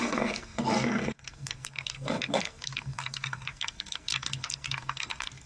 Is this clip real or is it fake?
fake